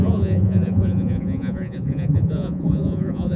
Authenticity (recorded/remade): remade